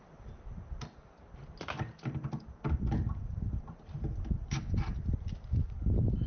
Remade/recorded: recorded